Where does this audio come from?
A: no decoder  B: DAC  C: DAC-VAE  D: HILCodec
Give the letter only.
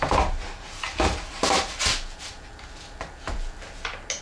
A